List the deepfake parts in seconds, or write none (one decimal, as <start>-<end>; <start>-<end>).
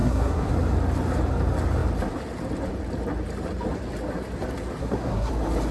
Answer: 0.0-0.5; 4.8-5.3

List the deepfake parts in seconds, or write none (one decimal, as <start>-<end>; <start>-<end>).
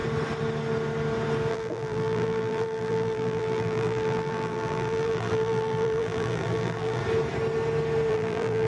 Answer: 1.5-7.0; 8.1-8.7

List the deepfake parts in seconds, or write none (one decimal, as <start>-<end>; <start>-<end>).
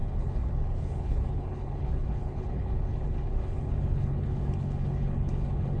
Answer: 0.0-5.8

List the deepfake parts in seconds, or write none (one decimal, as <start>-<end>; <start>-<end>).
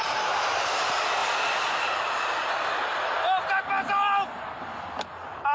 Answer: none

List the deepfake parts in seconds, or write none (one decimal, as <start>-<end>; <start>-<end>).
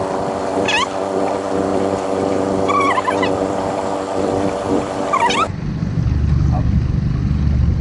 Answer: 1.7-5.2